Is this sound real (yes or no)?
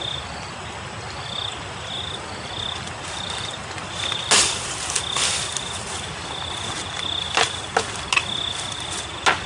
yes